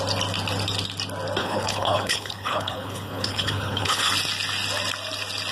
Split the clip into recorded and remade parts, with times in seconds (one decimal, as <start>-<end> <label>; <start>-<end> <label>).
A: 0.0-1.4 recorded; 1.4-4.1 remade; 4.1-5.5 recorded